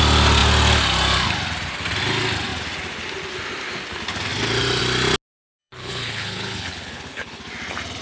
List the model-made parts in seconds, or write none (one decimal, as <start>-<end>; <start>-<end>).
5.6-7.4